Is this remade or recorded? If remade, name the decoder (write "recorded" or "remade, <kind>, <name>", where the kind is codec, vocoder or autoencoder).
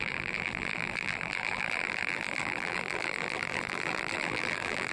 remade, vocoder, BigVGAN v2